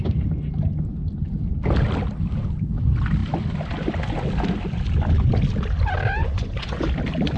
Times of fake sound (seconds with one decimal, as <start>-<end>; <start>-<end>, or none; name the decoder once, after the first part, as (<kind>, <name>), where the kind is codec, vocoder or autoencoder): 6.2-6.8 (vocoder, Vocos)